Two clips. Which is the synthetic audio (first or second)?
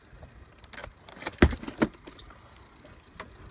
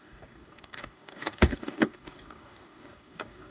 second